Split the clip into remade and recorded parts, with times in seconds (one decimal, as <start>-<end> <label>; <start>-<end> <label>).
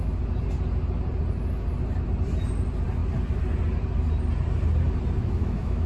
0.0-5.2 recorded; 5.2-5.9 remade